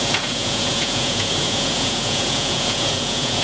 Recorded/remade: remade